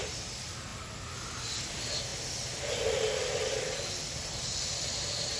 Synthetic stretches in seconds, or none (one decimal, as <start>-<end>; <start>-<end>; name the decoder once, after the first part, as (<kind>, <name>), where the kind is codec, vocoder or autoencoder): none